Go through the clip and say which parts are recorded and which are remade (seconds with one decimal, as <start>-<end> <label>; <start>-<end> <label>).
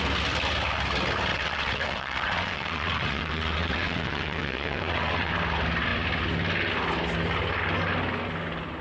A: 0.0-1.3 recorded; 1.3-5.3 remade; 5.3-8.8 recorded